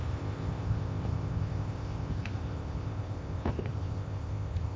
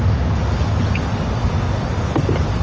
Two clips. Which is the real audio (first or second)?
second